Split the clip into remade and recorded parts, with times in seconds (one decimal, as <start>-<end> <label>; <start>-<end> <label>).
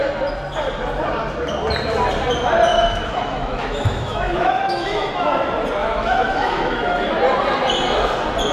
0.0-2.7 recorded; 2.7-5.1 remade; 5.1-5.8 recorded; 5.8-7.1 remade; 7.1-8.5 recorded